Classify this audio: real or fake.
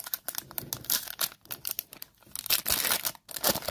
real